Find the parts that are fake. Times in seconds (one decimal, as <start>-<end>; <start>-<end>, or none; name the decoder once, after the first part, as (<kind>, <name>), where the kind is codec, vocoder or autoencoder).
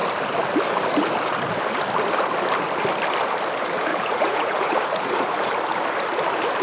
3.9-5.5 (vocoder, Vocos)